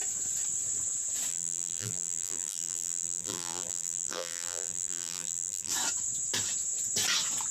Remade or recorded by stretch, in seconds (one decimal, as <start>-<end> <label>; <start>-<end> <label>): 0.0-1.3 recorded; 1.3-5.7 remade; 5.7-7.5 recorded